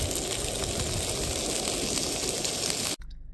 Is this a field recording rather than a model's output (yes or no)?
yes